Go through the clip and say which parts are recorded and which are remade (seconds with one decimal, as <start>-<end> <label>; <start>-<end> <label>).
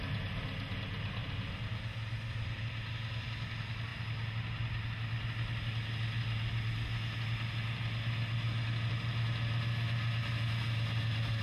0.0-11.4 recorded